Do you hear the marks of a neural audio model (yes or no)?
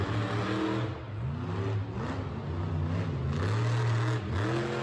no